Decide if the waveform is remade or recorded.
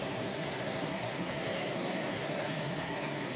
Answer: remade